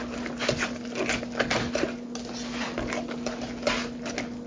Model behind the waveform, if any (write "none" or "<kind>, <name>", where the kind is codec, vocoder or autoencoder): none